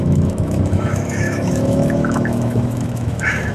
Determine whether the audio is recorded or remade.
remade